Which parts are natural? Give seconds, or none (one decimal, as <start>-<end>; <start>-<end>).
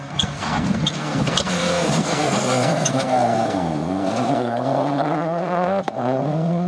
none